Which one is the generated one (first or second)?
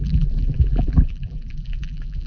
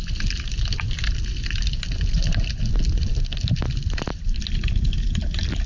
first